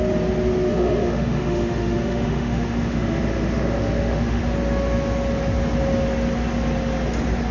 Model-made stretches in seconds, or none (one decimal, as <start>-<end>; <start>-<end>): 0.7-4.4

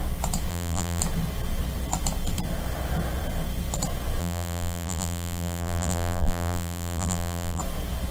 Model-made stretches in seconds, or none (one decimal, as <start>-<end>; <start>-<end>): 0.5-1.0; 4.2-7.6

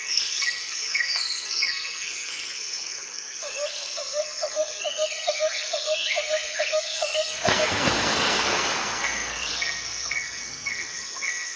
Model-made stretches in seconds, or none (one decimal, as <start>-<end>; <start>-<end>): 0.0-11.6